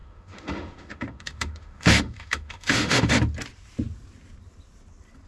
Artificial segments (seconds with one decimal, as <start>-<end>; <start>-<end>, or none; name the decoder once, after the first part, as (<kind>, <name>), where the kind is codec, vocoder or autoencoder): 0.0-3.1 (autoencoder, DAC-VAE)